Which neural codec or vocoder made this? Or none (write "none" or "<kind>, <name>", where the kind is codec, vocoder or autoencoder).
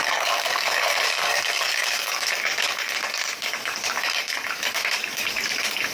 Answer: codec, DAC